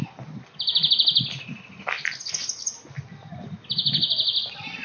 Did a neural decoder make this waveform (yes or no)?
no